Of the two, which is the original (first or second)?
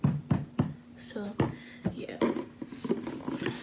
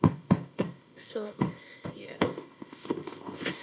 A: first